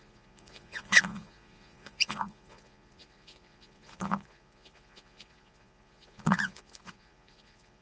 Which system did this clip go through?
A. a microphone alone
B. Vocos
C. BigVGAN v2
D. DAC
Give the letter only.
B